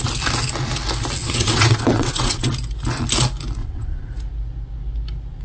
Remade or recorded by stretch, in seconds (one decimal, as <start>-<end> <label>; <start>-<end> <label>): 0.0-1.2 recorded; 1.2-2.5 remade; 2.5-3.6 recorded; 3.6-4.1 remade; 4.1-5.4 recorded